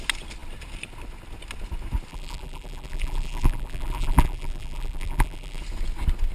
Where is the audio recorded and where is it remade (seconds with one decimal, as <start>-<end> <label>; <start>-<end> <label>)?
0.0-2.1 recorded; 2.1-5.6 remade; 5.6-6.3 recorded